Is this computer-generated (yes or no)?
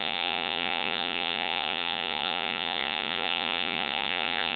yes